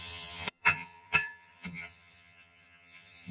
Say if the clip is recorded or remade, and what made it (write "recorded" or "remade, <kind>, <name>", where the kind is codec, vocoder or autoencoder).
remade, vocoder, HiFi-GAN